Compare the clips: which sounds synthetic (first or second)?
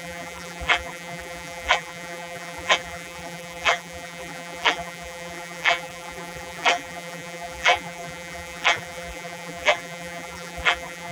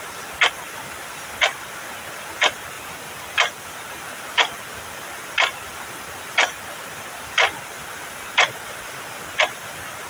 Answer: first